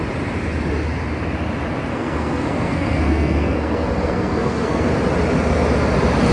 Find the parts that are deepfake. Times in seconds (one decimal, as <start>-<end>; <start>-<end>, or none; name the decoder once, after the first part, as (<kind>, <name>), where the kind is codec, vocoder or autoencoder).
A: 1.9-4.9 (codec, SNAC)